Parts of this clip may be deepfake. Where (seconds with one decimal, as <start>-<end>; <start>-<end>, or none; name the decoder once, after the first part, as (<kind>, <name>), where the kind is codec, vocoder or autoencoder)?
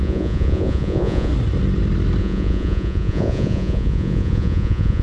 0.0-1.3 (vocoder, Vocos); 2.2-5.0